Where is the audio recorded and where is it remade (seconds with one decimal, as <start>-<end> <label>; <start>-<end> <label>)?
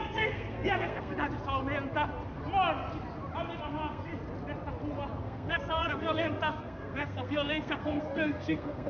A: 0.0-1.1 remade; 1.1-3.6 recorded; 3.6-4.1 remade; 4.1-5.2 recorded; 5.2-8.9 remade